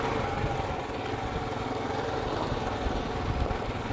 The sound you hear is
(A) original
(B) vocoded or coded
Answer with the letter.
A